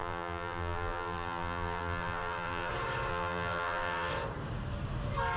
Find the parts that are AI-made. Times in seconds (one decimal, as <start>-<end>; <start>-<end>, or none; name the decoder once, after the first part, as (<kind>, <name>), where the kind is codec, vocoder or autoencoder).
0.0-2.7 (vocoder, BigVGAN v2); 3.1-4.1